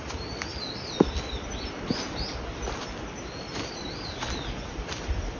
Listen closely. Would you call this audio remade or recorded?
recorded